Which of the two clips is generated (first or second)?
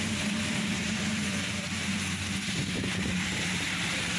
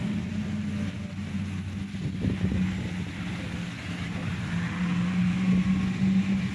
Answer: first